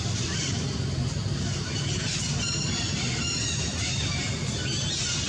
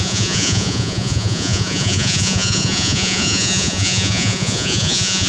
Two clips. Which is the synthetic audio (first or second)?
second